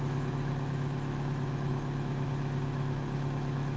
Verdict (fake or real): fake